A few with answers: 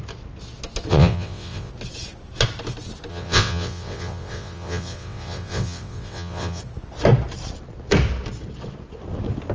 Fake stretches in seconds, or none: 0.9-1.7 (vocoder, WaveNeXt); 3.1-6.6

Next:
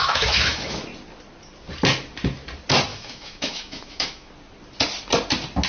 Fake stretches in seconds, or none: 0.0-0.8 (autoencoder, DAC-VAE); 2.9-4.3

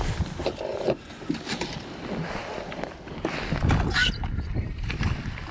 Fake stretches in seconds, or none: 0.7-1.2 (vocoder, Vocos)

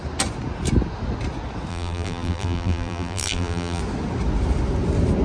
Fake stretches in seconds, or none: 1.7-3.8 (vocoder, BigVGAN v2)

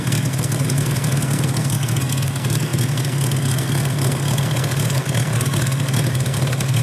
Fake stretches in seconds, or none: 0.0-6.8 (codec, SNAC)